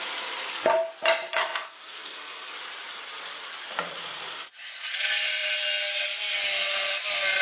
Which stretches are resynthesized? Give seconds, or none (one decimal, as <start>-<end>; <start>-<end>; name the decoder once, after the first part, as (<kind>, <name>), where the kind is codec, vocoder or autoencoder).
1.4-2.5 (codec, SNAC)